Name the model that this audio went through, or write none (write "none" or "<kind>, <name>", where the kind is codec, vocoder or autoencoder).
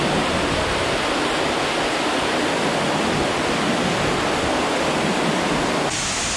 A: none